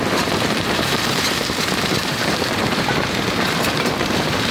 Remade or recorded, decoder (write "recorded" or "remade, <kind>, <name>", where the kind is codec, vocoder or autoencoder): remade, vocoder, BigVGAN v2